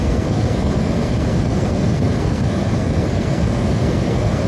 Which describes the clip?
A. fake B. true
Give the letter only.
A